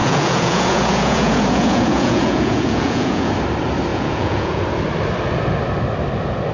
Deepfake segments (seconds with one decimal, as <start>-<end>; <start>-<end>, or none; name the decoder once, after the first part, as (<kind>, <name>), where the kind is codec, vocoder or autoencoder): 0.0-3.3 (vocoder, Vocos); 3.9-4.6